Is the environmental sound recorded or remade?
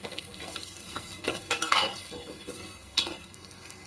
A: remade